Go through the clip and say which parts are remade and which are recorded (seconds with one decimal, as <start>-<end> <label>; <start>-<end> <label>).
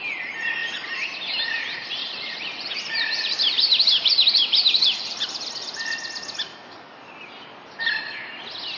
0.0-2.0 recorded; 2.0-5.5 remade; 5.5-8.8 recorded